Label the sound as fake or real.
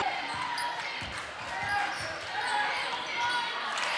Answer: fake